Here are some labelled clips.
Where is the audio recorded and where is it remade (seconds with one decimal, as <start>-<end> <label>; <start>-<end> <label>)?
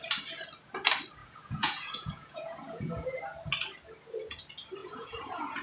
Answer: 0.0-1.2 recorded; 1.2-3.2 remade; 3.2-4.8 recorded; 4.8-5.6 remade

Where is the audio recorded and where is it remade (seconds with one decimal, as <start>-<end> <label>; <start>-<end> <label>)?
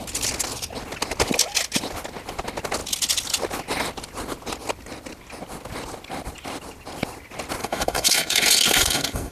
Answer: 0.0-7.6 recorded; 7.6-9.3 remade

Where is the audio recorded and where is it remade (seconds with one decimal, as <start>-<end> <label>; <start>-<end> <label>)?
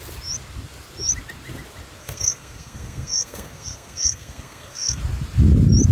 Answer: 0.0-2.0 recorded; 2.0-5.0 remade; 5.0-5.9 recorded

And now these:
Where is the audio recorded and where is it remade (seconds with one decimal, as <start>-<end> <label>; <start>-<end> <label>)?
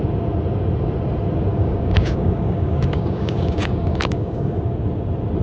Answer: 0.0-1.5 recorded; 1.5-4.7 remade; 4.7-5.4 recorded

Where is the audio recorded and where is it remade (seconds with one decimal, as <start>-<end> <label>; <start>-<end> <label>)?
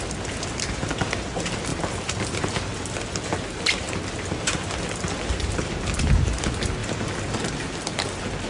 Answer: 0.0-8.5 recorded